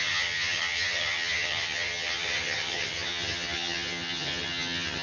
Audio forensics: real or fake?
fake